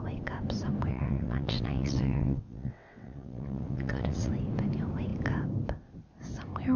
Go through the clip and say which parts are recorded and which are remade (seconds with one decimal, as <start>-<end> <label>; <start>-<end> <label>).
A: 0.0-0.9 recorded; 0.9-4.3 remade; 4.3-6.8 recorded